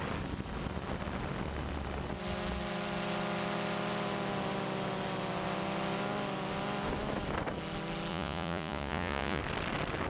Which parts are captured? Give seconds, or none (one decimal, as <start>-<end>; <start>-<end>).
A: 0.0-8.1; 9.4-10.1